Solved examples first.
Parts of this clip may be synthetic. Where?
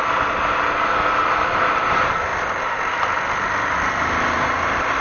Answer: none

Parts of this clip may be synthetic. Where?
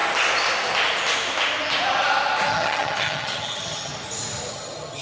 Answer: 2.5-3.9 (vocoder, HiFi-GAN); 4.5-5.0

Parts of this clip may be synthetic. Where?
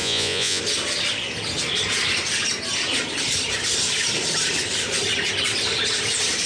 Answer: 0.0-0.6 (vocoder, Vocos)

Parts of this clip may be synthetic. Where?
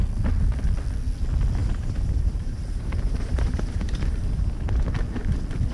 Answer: 1.6-4.6 (vocoder, BigVGAN v2)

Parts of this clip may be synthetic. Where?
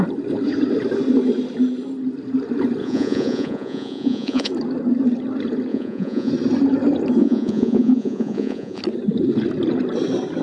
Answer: 2.8-4.5 (vocoder, Vocos); 5.7-6.3; 7.2-8.8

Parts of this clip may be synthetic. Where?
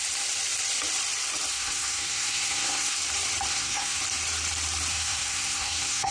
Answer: 1.5-3.0 (codec, SNAC); 3.5-4.0; 4.9-6.1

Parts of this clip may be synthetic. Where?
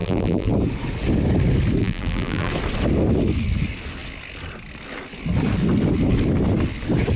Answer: 0.0-0.5 (vocoder, BigVGAN v2); 1.8-2.5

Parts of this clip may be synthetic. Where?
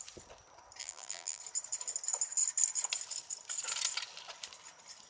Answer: 0.8-1.4 (vocoder, BigVGAN v2)